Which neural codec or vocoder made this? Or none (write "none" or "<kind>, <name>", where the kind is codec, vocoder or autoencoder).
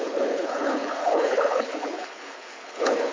codec, HILCodec